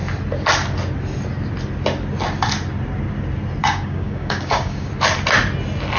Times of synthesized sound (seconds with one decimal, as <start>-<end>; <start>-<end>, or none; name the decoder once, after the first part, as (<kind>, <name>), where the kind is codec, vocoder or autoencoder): 3.6-4.9 (codec, DAC)